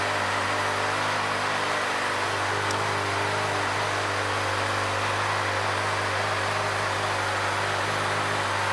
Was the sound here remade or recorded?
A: recorded